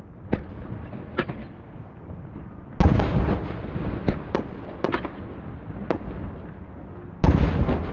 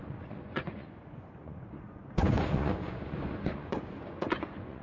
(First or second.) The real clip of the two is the first